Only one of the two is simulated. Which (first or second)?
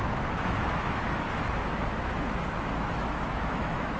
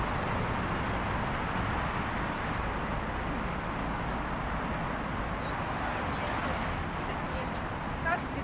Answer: first